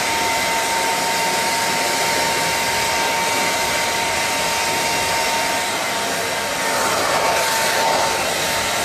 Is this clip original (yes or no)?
yes